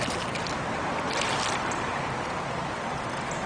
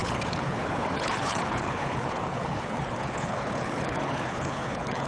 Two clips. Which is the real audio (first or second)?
first